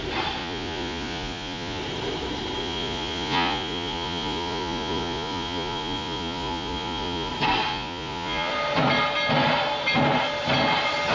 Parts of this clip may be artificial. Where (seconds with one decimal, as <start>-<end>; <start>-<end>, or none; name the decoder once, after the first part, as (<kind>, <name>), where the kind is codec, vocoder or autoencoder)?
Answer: 0.4-1.8 (vocoder, Vocos); 2.6-7.3; 7.7-8.5